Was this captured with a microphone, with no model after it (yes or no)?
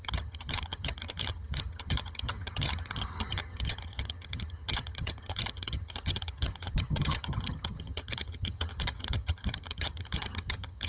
no